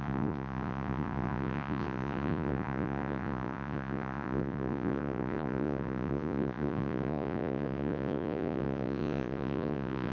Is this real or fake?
fake